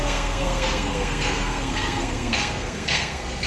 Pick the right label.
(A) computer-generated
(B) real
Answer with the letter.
A